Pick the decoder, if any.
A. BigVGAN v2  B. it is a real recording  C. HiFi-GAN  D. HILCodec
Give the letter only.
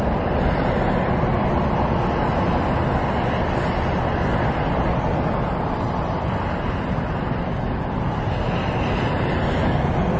B